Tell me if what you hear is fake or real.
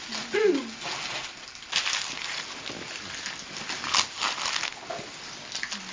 real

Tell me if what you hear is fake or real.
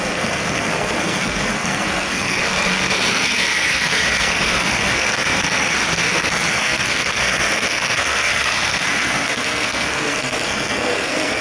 fake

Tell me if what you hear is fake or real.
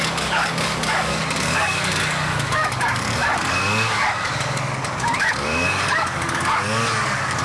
fake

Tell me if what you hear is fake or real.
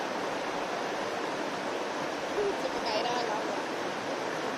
real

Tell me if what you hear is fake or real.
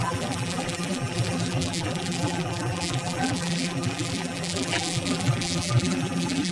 fake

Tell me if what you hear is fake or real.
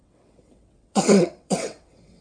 fake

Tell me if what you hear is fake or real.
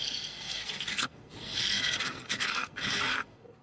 fake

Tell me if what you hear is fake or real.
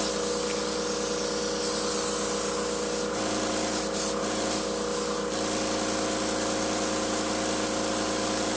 real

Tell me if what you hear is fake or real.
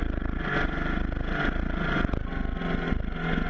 real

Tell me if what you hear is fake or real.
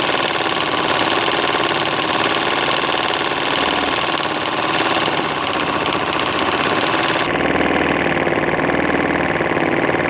real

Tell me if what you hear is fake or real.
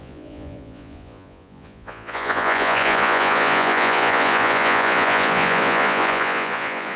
fake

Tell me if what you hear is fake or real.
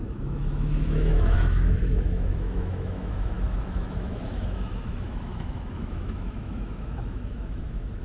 fake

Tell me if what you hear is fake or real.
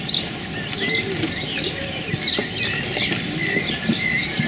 real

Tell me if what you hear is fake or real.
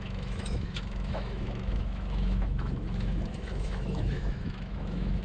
fake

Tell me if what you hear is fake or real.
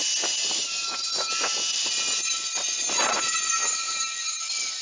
real